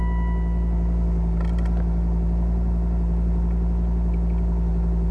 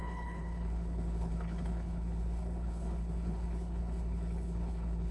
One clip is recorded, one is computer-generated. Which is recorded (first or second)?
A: first